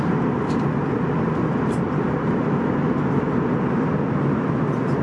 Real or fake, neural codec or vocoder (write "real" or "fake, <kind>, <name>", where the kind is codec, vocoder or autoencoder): real